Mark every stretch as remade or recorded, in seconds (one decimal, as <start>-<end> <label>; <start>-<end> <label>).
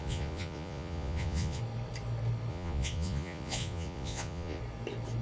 0.0-1.6 remade; 1.6-2.5 recorded; 2.5-4.6 remade; 4.6-5.2 recorded